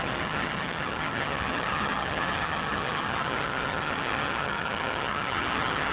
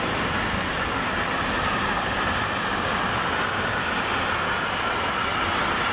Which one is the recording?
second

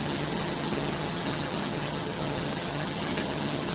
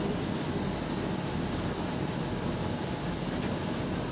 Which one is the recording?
second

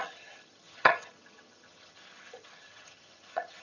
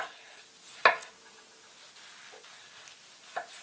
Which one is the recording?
second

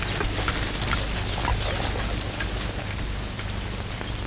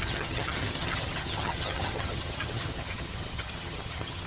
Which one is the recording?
first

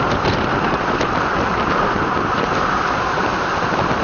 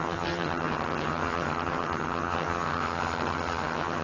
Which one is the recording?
first